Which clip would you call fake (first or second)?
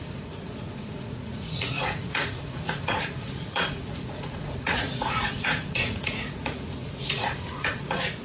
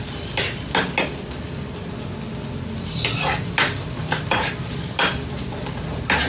first